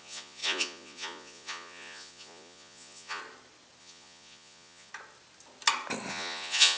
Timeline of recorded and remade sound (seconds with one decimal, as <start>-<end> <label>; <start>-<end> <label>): 0.0-3.2 remade; 3.2-3.8 recorded; 3.8-4.9 remade; 4.9-6.1 recorded; 6.1-6.8 remade